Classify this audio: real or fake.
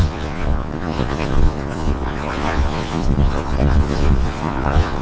fake